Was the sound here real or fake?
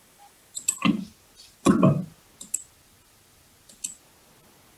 real